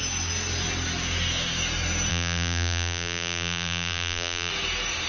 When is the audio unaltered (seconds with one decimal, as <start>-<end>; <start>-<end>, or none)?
0.0-2.1; 4.5-5.1